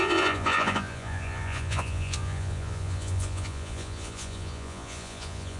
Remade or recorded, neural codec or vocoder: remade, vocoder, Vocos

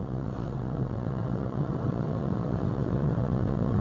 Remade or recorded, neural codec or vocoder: remade, vocoder, WaveNeXt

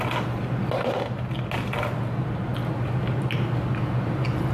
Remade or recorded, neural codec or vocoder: recorded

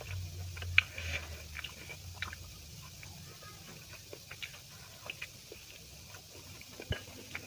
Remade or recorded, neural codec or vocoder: recorded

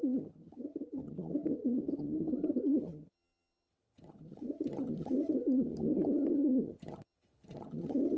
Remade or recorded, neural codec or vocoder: remade, vocoder, HiFi-GAN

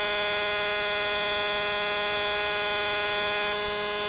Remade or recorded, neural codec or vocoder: recorded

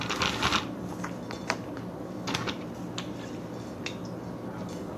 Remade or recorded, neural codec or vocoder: recorded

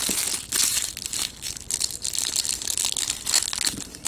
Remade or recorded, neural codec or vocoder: recorded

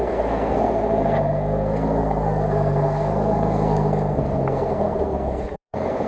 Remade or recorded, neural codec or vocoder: remade, codec, SNAC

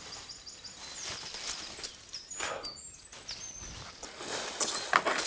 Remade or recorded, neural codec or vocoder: recorded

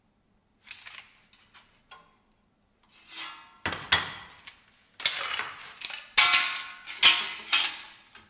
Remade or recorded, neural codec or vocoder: recorded